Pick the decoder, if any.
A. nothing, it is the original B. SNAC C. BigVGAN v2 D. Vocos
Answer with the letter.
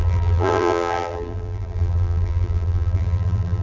C